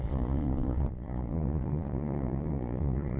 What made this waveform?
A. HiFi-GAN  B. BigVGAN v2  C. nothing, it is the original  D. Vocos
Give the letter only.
D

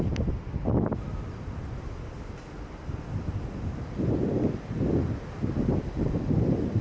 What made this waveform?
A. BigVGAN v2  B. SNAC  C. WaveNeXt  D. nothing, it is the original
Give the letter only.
D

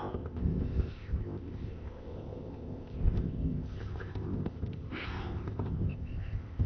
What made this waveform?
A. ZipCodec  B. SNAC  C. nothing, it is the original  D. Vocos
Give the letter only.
A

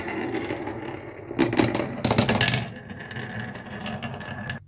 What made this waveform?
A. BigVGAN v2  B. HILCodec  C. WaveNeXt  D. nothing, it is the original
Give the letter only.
D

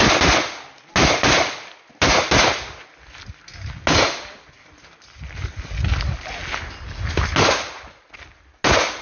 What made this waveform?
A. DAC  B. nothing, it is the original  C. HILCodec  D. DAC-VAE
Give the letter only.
B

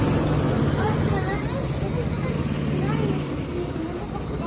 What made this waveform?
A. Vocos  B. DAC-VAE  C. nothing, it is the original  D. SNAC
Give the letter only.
C